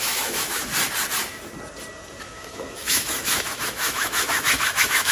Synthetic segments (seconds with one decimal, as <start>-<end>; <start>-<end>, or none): 0.0-0.7; 2.2-5.1